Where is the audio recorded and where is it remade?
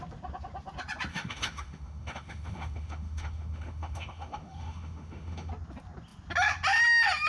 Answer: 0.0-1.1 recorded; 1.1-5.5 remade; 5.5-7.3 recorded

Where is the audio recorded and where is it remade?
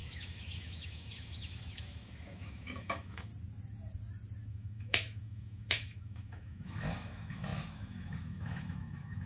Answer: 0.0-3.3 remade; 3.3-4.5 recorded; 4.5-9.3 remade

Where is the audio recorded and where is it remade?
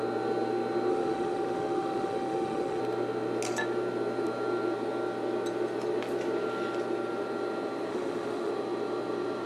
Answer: 0.0-0.9 recorded; 0.9-2.8 remade; 2.8-7.9 recorded; 7.9-8.5 remade; 8.5-9.5 recorded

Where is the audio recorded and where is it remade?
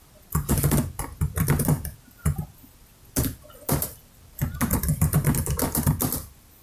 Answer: 0.0-6.6 recorded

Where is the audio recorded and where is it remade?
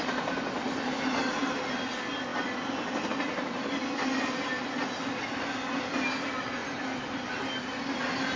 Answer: 0.0-8.4 recorded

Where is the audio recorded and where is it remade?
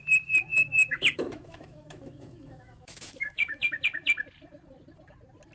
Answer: 0.0-0.5 recorded; 0.5-3.8 remade; 3.8-5.5 recorded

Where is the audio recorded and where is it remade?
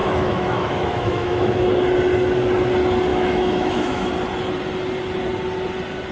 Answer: 0.0-1.7 remade; 1.7-3.1 recorded; 3.1-4.1 remade; 4.1-6.1 recorded